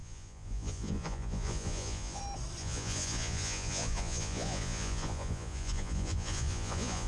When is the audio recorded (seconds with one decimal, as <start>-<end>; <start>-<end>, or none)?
2.2-2.6